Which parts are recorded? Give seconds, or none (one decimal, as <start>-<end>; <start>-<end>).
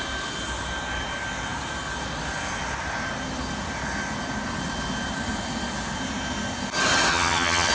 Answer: 0.0-7.1